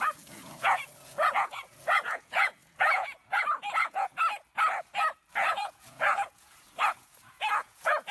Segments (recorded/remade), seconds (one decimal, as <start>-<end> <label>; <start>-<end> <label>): 0.0-4.1 remade; 4.1-5.5 recorded; 5.5-8.1 remade